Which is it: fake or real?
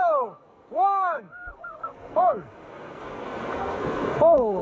fake